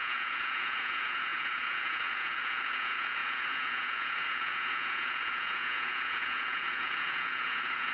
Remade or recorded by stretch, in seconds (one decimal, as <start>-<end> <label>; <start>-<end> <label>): 0.0-7.9 remade

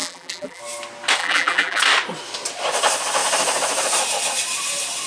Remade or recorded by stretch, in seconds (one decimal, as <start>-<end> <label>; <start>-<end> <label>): 0.0-0.6 remade; 0.6-1.2 recorded; 1.2-1.8 remade; 1.8-5.1 recorded

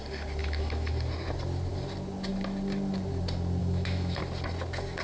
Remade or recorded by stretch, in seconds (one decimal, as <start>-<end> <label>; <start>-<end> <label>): 0.0-0.4 recorded; 0.4-0.9 remade; 0.9-3.6 recorded; 3.6-4.2 remade; 4.2-5.0 recorded

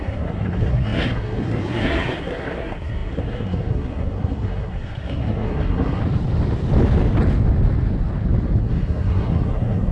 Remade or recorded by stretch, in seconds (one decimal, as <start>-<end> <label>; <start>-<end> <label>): 0.0-6.0 remade; 6.0-8.6 recorded; 8.6-9.9 remade

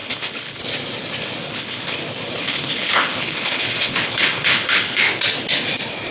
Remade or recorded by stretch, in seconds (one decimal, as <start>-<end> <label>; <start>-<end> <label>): 0.0-0.6 remade; 0.6-1.5 recorded; 1.5-2.0 remade; 2.0-2.4 recorded; 2.4-5.1 remade; 5.1-6.1 recorded

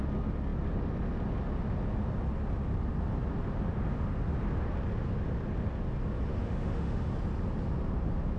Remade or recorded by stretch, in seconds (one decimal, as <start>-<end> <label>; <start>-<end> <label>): 0.0-6.3 recorded; 6.3-7.1 remade; 7.1-8.4 recorded

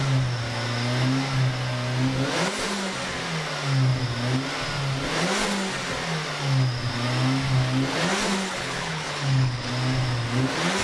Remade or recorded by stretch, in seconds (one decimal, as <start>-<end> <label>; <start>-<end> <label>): 0.0-8.5 recorded; 8.5-9.7 remade; 9.7-10.8 recorded

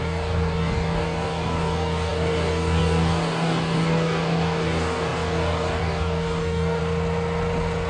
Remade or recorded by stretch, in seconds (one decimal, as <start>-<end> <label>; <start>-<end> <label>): 0.0-6.8 remade; 6.8-7.9 recorded